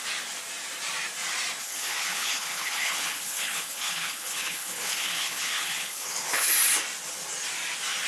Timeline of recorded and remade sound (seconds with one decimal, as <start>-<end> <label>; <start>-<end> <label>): 0.0-1.6 recorded; 1.6-6.5 remade; 6.5-8.1 recorded